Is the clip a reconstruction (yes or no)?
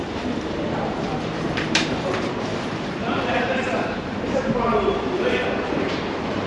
yes